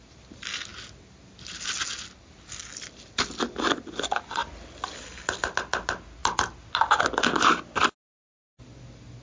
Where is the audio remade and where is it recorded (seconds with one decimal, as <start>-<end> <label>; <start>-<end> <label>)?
0.0-9.2 recorded